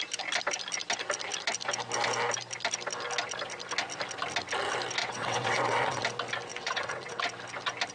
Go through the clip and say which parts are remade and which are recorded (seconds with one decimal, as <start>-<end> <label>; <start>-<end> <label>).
0.0-5.0 recorded; 5.0-6.0 remade; 6.0-6.5 recorded; 6.5-7.2 remade; 7.2-7.9 recorded